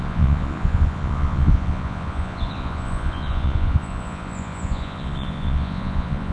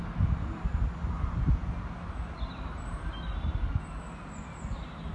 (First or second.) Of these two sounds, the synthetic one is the first